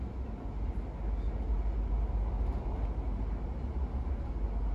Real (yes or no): yes